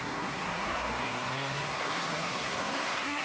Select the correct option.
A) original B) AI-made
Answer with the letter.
B